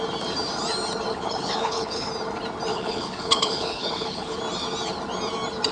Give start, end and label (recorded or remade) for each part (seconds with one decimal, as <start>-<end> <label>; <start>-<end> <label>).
0.0-1.1 recorded; 1.1-2.1 remade; 2.1-2.7 recorded; 2.7-4.4 remade; 4.4-5.7 recorded